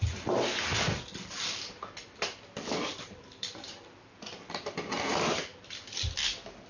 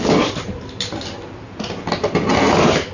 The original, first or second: second